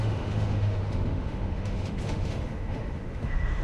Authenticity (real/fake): fake